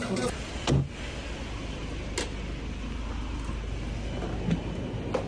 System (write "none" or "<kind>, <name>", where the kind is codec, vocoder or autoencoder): none